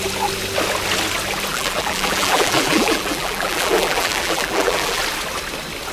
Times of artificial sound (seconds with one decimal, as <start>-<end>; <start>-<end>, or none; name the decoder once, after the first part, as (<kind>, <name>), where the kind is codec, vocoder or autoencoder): 1.5-5.0 (vocoder, BigVGAN v2)